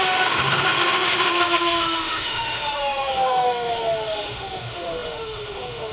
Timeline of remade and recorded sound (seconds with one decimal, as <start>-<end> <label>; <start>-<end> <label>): 0.0-5.9 remade